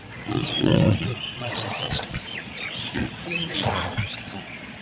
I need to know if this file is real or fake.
fake